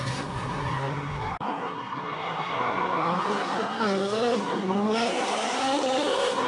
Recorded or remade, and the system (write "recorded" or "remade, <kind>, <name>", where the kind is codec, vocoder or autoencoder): remade, codec, SNAC